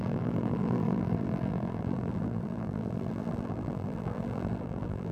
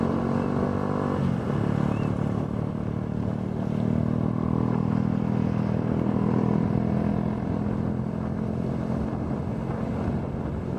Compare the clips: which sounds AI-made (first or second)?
first